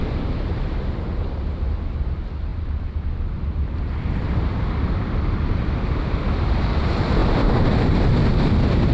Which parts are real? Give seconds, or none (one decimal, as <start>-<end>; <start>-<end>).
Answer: none